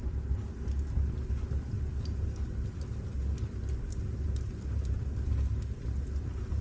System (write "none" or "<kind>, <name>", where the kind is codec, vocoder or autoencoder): none